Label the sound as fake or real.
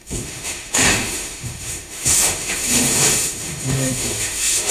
fake